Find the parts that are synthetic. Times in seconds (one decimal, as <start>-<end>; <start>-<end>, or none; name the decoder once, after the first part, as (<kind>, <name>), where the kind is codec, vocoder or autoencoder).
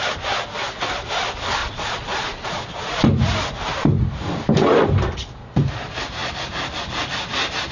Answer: 1.6-2.6 (vocoder, Vocos)